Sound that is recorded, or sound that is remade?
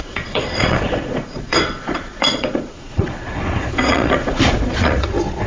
remade